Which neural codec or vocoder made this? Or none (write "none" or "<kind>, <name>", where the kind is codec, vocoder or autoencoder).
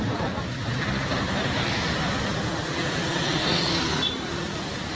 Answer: none